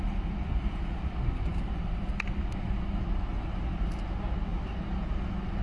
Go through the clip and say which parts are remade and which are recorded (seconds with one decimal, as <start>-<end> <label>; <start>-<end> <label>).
0.0-5.6 recorded